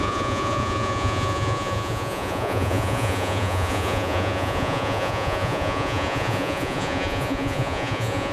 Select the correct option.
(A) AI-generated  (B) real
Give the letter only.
A